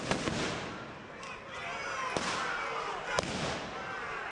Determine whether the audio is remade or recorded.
recorded